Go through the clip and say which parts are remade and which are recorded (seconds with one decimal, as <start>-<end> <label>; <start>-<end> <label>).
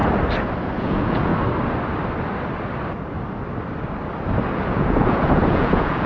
0.0-0.8 recorded; 0.8-1.3 remade; 1.3-4.5 recorded; 4.5-6.1 remade